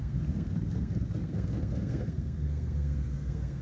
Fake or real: fake